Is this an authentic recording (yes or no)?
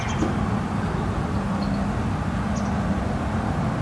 yes